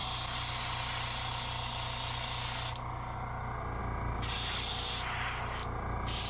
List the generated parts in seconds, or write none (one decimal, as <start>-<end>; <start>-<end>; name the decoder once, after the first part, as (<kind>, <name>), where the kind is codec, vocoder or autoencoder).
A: none